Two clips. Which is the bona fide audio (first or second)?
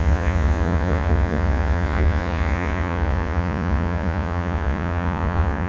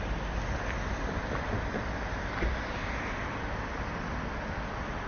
second